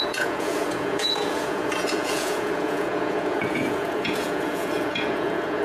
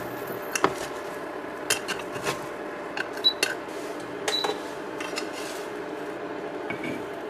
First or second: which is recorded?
second